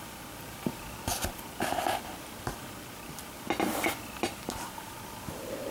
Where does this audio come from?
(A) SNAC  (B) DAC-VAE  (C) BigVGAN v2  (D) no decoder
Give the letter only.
C